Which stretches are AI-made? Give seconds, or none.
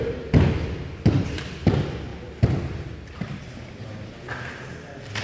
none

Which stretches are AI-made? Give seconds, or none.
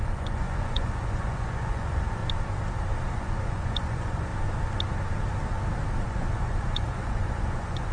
0.0-2.2 (vocoder, Vocos); 3.1-4.3; 6.0-7.9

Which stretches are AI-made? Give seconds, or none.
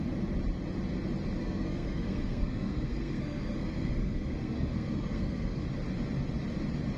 1.4-5.6 (codec, SNAC)